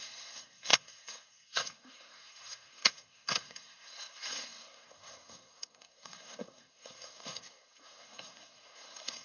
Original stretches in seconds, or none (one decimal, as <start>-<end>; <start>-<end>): none